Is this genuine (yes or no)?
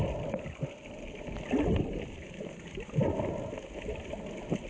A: yes